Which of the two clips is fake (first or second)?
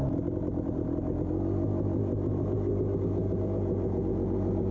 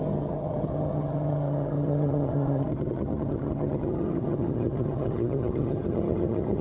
second